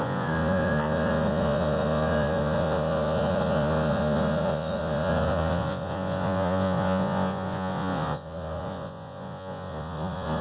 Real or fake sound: fake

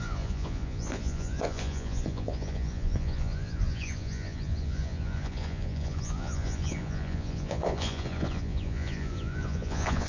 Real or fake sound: fake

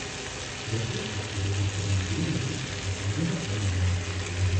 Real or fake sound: real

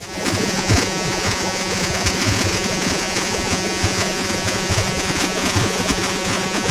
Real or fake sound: fake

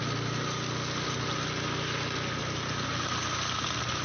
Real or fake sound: real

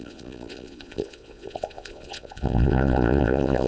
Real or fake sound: fake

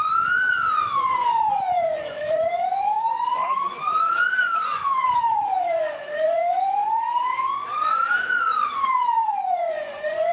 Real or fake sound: fake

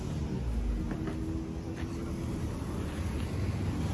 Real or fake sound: real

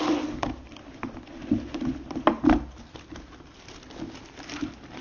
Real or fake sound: real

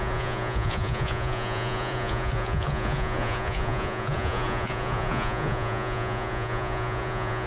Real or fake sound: fake